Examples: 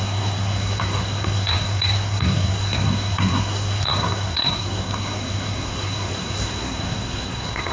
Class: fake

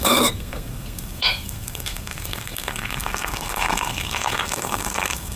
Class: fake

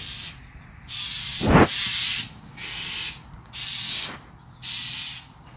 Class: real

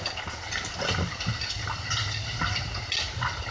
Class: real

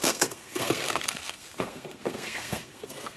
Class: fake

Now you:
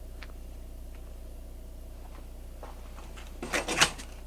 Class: real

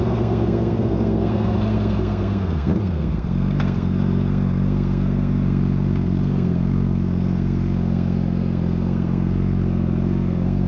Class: fake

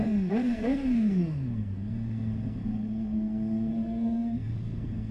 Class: fake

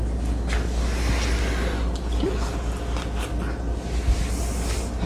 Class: real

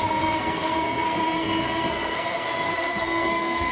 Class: fake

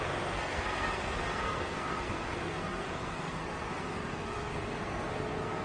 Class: fake